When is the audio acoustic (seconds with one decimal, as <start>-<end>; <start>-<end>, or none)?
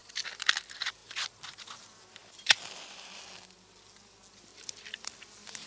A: 0.5-2.2; 3.2-4.5; 5.2-5.7